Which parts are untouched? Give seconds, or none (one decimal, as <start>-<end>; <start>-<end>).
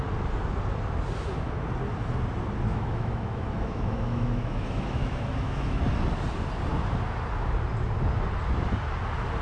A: 0.0-2.7; 5.8-9.4